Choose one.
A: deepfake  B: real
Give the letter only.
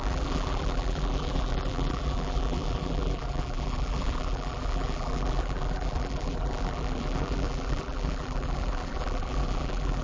A